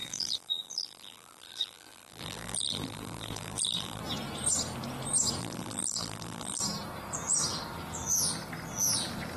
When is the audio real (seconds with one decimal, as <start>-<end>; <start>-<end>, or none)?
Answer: 4.0-5.4; 6.6-9.4